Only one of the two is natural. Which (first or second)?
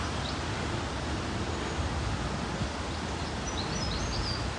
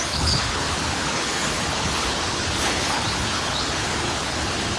first